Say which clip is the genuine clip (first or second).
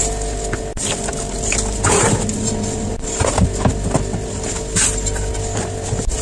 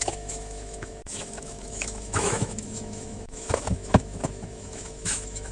first